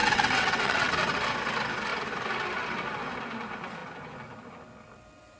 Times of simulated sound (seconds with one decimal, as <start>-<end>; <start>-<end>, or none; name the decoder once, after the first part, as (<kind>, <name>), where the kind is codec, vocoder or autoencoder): 0.0-0.9 (vocoder, WaveNeXt)